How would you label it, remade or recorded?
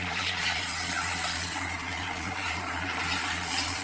remade